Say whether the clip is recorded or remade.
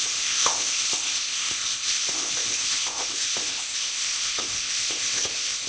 remade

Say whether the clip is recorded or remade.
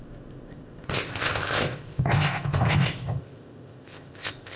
remade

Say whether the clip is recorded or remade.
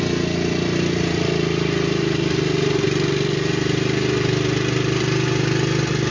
recorded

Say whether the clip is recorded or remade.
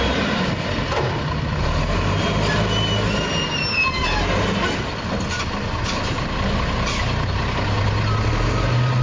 recorded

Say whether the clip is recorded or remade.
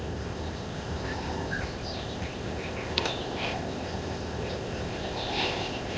remade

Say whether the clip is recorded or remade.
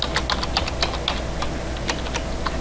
recorded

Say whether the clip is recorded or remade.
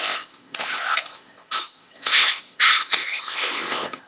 remade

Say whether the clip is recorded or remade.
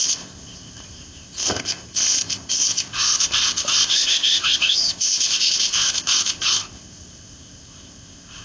remade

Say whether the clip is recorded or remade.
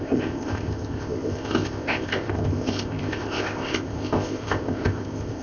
remade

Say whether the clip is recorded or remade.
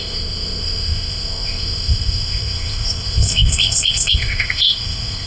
remade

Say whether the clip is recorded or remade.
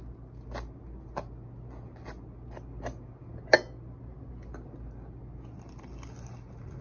recorded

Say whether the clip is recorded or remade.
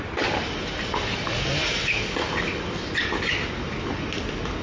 recorded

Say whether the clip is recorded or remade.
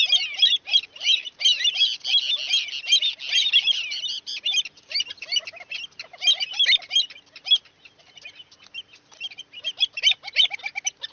recorded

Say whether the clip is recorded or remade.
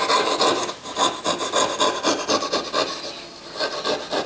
recorded